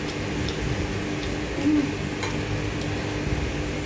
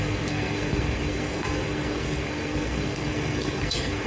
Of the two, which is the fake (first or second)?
second